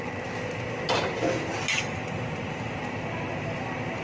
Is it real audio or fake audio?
real